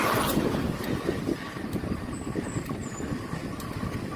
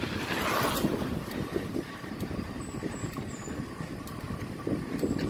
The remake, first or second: second